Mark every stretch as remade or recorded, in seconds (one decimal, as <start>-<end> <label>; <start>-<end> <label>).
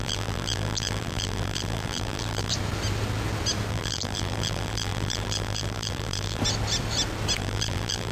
0.0-2.5 remade; 2.5-3.7 recorded; 3.7-6.4 remade; 6.4-7.4 recorded; 7.4-8.1 remade